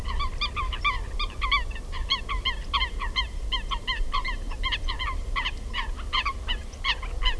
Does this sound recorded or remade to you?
recorded